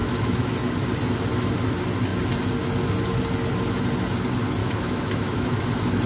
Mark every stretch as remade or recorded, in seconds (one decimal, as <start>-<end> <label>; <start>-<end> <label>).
0.0-0.5 remade; 0.5-4.6 recorded; 4.6-5.6 remade; 5.6-6.1 recorded